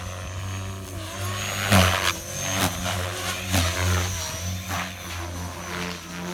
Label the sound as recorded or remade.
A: recorded